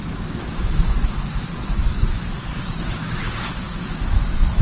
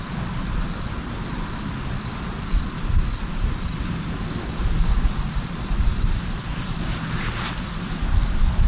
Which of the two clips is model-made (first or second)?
first